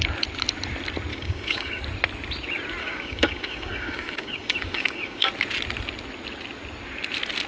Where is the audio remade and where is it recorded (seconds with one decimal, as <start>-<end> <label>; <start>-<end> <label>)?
0.0-1.1 recorded; 1.1-1.8 remade; 1.8-2.8 recorded; 2.8-5.3 remade; 5.3-7.5 recorded